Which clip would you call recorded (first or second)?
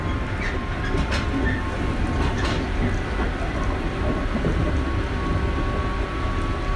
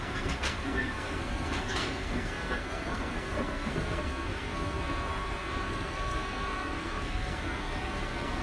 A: first